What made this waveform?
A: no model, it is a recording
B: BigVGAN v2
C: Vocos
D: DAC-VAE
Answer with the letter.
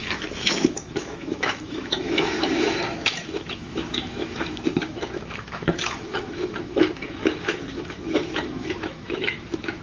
D